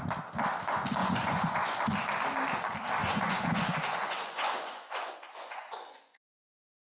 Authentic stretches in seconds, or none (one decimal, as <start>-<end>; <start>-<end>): 0.0-1.0; 1.8-3.0